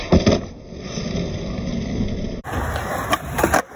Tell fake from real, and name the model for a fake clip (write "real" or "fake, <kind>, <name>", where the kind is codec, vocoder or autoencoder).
real